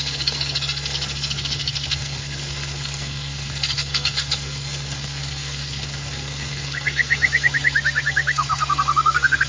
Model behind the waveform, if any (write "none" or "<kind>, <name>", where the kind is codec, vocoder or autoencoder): codec, SNAC